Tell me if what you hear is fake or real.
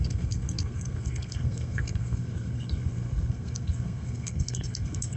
fake